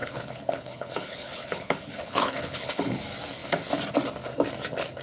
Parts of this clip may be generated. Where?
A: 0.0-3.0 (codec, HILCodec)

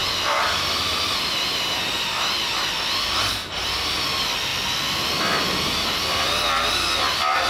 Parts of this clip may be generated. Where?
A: 0.0-1.9 (vocoder, BigVGAN v2); 3.4-3.9

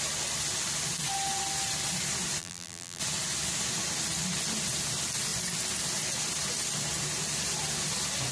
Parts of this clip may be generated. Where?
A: 2.4-3.0 (vocoder, BigVGAN v2)

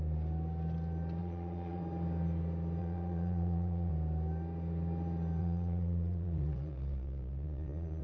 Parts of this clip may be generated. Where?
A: 1.2-1.8 (vocoder, Vocos); 2.8-3.9; 5.4-8.0

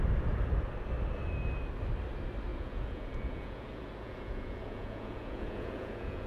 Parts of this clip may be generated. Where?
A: 2.5-6.3 (vocoder, Vocos)